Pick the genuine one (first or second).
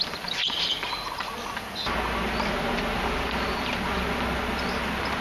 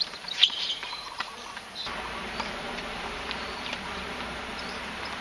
first